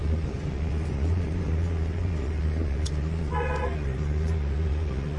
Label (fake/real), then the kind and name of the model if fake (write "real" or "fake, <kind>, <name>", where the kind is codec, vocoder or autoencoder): fake, vocoder, Vocos